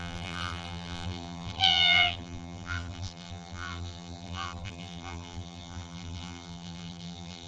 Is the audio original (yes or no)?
no